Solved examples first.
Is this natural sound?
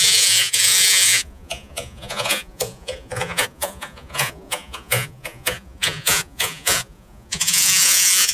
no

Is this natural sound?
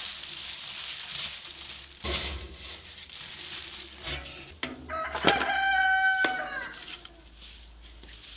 yes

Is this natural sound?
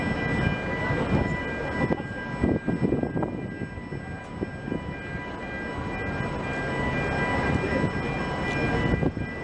yes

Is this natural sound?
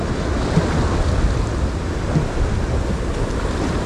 yes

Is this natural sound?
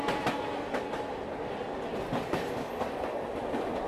yes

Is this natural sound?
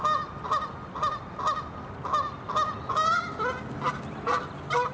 yes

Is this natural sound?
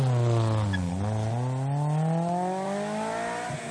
yes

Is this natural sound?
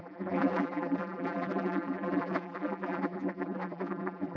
no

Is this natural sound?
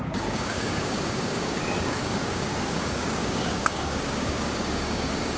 no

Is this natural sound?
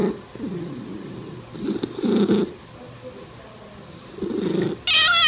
yes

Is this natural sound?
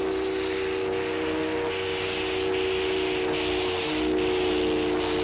yes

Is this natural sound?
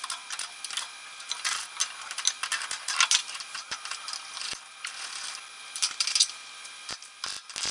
yes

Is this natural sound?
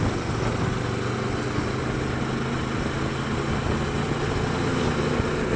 yes